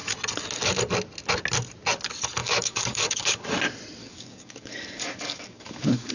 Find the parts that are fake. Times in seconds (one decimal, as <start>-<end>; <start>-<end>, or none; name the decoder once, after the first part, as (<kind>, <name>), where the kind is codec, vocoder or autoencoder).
2.4-3.5 (codec, DAC); 4.0-6.1